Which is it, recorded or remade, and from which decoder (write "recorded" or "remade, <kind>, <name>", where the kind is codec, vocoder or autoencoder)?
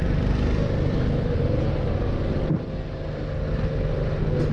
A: recorded